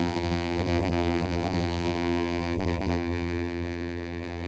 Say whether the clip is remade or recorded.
remade